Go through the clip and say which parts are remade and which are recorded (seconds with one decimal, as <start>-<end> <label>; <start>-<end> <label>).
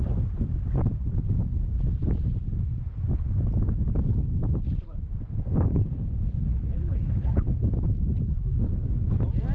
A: 0.0-5.5 recorded; 5.5-7.7 remade; 7.7-9.5 recorded